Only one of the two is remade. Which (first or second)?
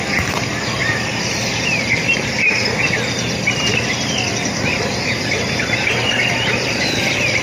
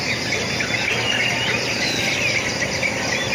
first